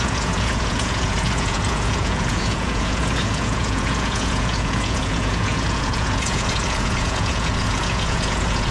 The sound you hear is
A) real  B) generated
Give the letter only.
B